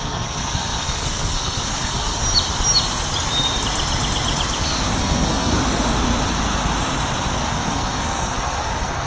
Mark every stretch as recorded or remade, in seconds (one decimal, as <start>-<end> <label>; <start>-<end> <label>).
0.0-2.2 remade; 2.2-5.0 recorded; 5.0-5.6 remade; 5.6-7.4 recorded; 7.4-9.1 remade